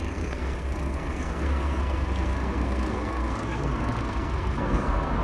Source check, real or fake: fake